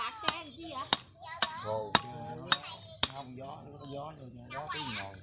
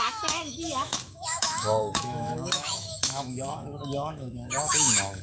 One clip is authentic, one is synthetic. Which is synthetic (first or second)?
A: second